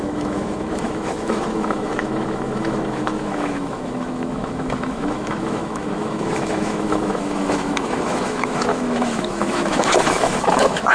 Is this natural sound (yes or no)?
no